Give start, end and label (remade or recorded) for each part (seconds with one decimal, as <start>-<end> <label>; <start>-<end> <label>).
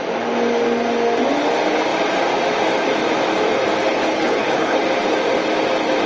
0.0-3.9 recorded; 3.9-4.8 remade; 4.8-6.1 recorded